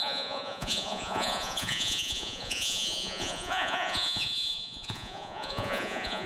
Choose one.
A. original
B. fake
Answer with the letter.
B